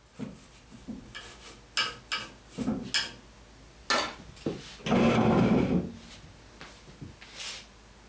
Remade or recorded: recorded